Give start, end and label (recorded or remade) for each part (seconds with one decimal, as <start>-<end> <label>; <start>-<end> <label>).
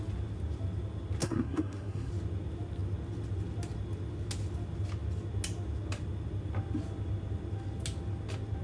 0.0-1.2 recorded; 1.2-2.1 remade; 2.1-8.6 recorded